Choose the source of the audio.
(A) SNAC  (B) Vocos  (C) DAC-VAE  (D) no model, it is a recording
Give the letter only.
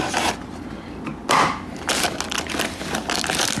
D